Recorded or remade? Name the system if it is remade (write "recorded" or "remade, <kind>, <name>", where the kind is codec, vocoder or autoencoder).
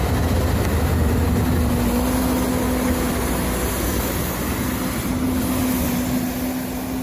recorded